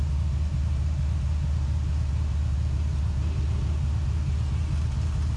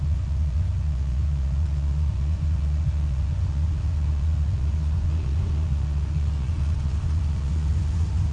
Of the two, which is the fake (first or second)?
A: second